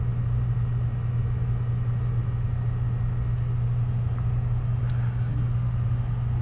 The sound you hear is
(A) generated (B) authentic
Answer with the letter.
B